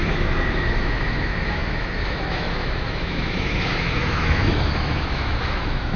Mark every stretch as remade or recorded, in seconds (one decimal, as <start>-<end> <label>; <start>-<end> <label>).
0.0-6.0 remade